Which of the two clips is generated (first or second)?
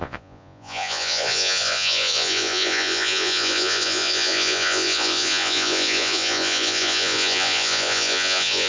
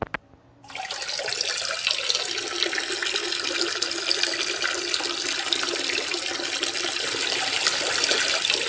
first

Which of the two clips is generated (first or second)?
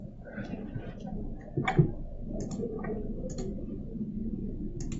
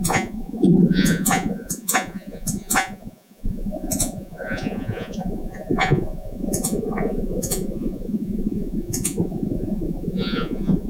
second